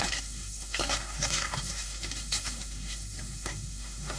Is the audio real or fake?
fake